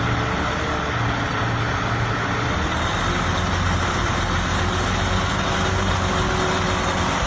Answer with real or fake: real